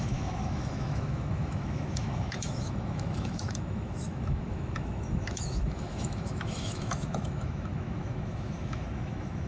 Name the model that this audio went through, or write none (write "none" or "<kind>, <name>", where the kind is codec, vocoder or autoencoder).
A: autoencoder, DAC-VAE